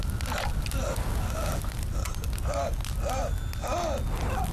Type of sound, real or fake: real